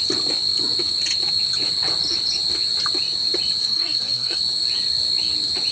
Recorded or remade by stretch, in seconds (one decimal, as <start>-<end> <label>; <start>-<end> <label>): 0.0-3.6 recorded; 3.6-4.4 remade; 4.4-5.7 recorded